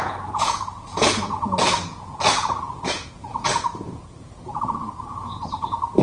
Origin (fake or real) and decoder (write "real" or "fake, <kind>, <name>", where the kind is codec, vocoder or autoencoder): fake, vocoder, Vocos